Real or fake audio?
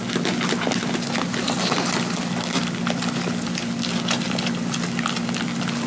real